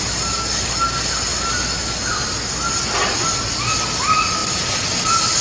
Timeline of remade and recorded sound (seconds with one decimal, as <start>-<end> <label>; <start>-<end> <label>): 0.0-5.4 recorded